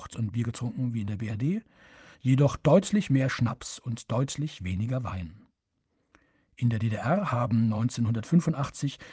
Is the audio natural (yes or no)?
no